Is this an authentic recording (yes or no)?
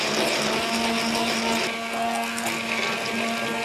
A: yes